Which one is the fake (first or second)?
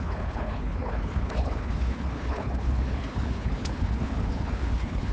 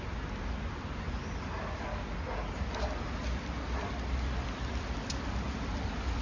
first